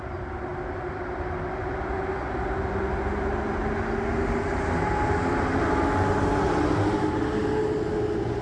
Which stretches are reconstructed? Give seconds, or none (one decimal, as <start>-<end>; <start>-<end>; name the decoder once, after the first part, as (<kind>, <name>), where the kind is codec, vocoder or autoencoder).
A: none